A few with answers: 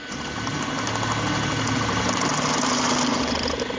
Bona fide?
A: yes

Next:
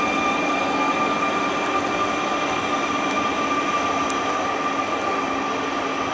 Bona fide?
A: yes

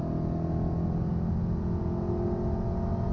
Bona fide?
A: yes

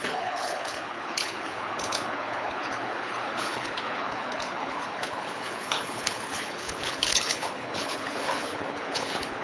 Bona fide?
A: no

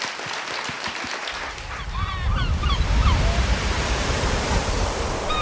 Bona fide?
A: no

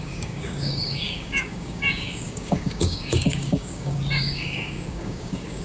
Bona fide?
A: no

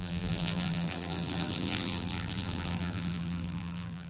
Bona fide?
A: no